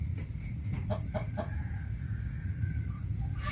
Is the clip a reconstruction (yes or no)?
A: yes